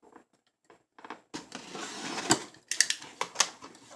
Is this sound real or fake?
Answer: real